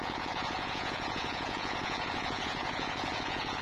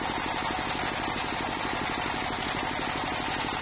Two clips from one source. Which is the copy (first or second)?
first